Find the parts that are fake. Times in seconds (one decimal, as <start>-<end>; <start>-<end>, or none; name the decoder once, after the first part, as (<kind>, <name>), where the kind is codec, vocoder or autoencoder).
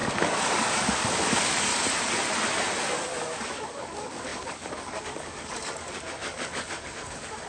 0.0-1.7 (codec, DAC); 3.4-7.5